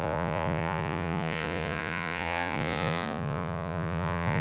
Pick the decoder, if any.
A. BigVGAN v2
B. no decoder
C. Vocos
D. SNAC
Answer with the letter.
C